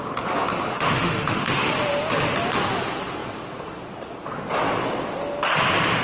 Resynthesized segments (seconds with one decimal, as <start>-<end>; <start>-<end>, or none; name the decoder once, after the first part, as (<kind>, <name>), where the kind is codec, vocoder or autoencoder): 0.7-1.7 (autoencoder, DAC-VAE)